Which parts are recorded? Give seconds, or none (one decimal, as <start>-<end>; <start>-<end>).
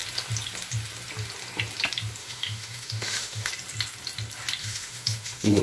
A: 0.0-2.2; 3.5-4.6